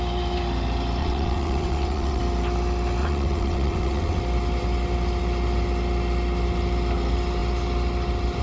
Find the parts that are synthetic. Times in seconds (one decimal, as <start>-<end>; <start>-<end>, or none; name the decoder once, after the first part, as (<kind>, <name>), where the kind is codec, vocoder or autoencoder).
1.0-2.2 (vocoder, WaveNeXt); 3.0-4.2

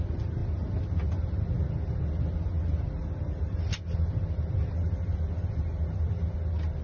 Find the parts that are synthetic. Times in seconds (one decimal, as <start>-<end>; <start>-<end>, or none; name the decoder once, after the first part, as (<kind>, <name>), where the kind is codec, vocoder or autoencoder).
none